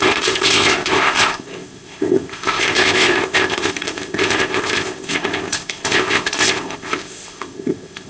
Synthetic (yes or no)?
yes